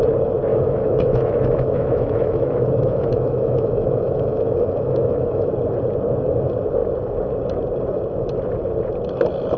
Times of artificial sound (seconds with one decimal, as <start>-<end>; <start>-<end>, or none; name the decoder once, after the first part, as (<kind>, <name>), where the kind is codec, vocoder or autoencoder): 0.5-5.5 (autoencoder, DAC-VAE)